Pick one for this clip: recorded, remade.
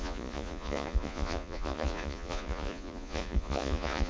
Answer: remade